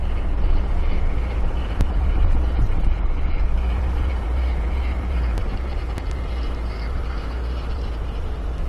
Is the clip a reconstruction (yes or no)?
yes